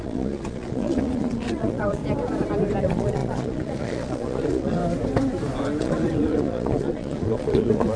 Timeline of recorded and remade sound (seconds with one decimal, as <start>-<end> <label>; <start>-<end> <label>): 0.0-2.0 remade; 2.0-2.8 recorded; 2.8-4.8 remade; 4.8-5.8 recorded; 5.8-8.0 remade